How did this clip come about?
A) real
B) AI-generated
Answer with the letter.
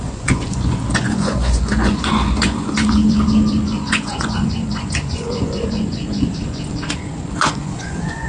B